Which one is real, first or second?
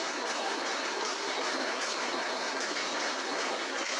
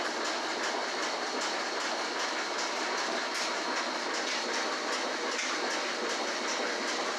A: second